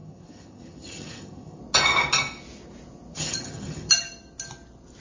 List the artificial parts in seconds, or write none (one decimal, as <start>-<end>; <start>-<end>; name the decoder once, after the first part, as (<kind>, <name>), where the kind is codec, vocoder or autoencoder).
0.0-1.6 (vocoder, HiFi-GAN); 3.2-3.9